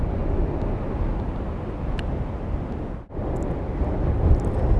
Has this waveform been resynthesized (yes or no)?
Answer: no